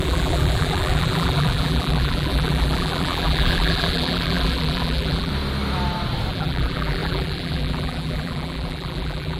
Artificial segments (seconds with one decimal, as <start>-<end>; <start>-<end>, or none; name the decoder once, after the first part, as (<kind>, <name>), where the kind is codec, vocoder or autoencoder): 0.0-5.3 (vocoder, BigVGAN v2); 6.3-9.4